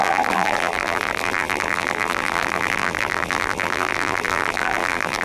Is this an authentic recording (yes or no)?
no